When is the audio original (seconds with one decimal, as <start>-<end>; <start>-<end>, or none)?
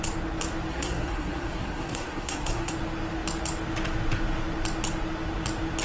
0.0-0.7; 2.7-5.8